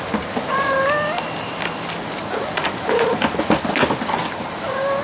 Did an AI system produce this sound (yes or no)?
no